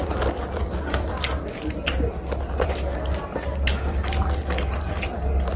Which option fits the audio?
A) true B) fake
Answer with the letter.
A